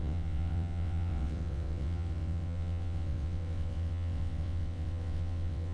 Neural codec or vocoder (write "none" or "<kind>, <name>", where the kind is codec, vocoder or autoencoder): vocoder, WaveNeXt